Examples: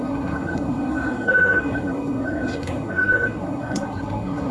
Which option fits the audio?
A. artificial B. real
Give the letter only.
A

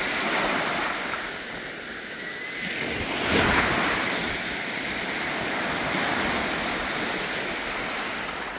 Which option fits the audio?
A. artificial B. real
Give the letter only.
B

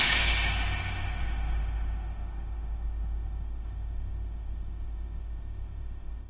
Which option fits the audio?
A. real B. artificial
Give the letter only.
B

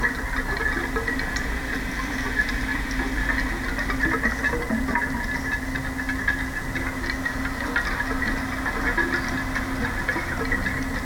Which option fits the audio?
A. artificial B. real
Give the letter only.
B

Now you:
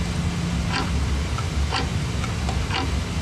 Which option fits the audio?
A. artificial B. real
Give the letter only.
B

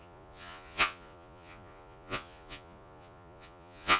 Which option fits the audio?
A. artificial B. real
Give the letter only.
A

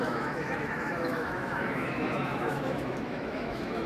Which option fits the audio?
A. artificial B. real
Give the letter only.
A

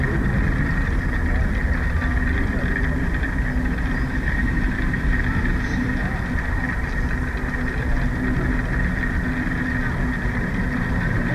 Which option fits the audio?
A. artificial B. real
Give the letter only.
B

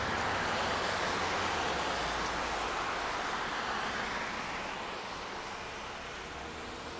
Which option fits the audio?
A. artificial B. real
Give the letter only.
B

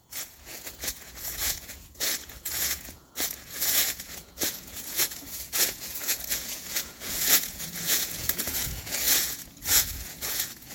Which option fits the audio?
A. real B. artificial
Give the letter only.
B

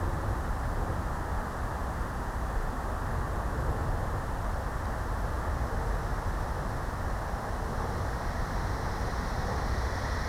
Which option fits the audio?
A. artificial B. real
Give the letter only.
B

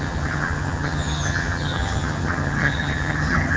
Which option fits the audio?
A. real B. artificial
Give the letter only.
B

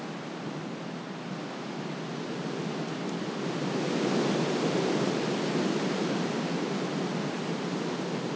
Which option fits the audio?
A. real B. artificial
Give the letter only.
A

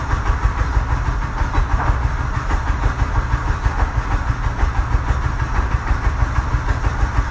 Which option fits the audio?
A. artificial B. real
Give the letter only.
B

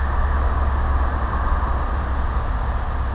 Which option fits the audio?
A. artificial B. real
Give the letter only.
B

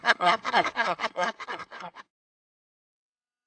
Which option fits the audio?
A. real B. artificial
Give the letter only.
B